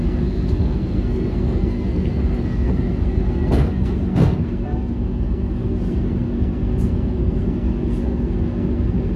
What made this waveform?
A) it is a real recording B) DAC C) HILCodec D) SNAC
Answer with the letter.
D